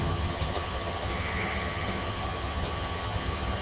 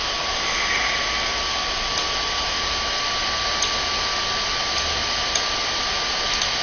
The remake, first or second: first